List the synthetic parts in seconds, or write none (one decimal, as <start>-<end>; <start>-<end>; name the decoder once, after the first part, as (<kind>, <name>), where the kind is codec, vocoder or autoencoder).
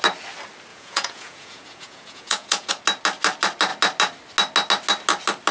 0.7-2.7 (vocoder, Vocos)